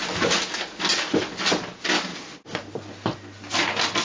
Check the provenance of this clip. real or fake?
real